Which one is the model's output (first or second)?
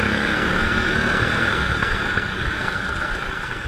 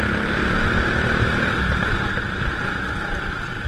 first